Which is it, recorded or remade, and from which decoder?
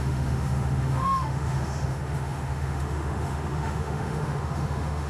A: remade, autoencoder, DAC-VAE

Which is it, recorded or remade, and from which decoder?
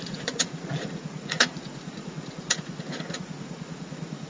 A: remade, vocoder, Vocos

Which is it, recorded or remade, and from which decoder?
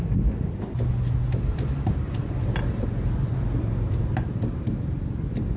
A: recorded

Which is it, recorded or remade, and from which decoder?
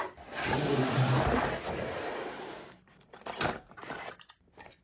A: recorded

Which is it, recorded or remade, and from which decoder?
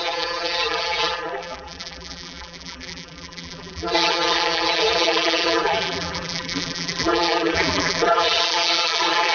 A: remade, vocoder, BigVGAN v2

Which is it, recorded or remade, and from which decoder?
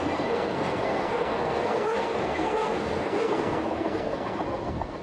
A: remade, codec, SNAC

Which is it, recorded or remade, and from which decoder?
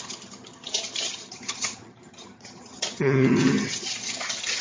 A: remade, vocoder, HiFi-GAN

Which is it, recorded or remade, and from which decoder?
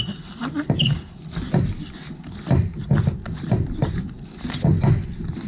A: recorded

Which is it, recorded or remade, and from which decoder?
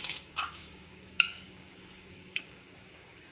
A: remade, codec, DAC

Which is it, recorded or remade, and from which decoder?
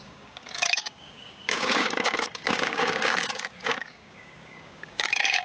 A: remade, codec, DAC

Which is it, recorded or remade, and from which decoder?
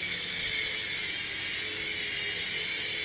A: recorded